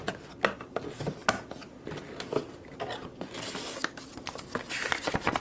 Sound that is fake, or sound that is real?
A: real